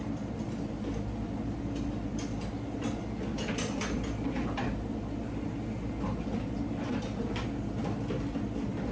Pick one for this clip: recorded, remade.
recorded